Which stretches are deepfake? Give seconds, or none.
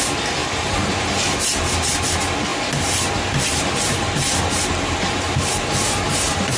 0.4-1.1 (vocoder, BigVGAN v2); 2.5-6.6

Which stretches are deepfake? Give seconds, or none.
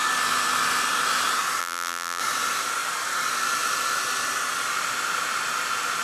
1.6-2.2 (vocoder, BigVGAN v2)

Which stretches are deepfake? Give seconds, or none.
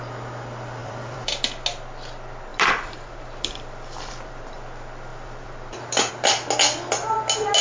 0.8-1.4 (vocoder, BigVGAN v2); 2.5-4.4; 5.1-6.1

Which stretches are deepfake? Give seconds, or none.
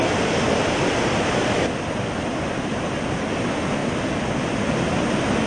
0.0-3.0 (vocoder, BigVGAN v2); 3.8-4.5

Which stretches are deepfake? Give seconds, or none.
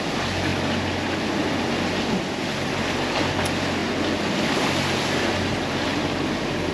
none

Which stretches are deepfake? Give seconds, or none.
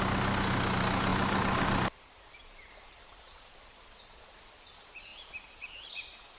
1.1-4.5 (vocoder, BigVGAN v2); 5.1-5.9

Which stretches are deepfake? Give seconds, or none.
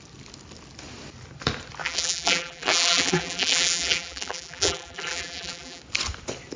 1.8-5.8 (vocoder, BigVGAN v2)